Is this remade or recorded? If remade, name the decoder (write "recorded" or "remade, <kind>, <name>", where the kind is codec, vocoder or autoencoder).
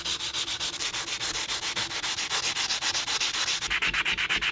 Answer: recorded